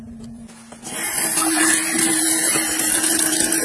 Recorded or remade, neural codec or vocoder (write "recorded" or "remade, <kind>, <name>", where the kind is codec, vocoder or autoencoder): recorded